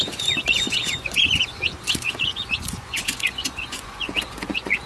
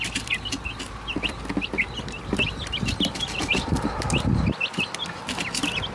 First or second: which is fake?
first